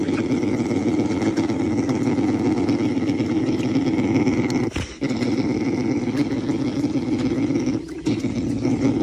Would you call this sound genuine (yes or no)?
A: yes